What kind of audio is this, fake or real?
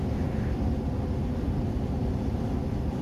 real